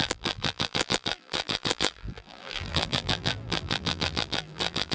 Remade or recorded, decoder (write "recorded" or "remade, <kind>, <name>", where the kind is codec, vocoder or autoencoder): remade, vocoder, BigVGAN v2